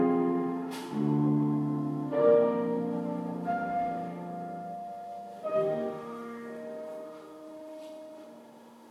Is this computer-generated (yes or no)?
yes